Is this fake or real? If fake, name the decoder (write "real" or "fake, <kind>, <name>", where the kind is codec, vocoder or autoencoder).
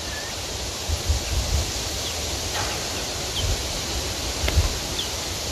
real